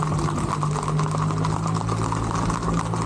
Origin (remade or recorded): recorded